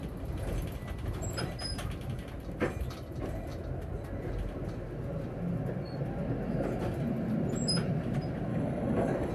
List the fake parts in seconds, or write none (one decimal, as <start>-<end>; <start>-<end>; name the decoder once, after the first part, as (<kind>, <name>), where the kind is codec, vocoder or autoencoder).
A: 8.5-9.3 (codec, DAC)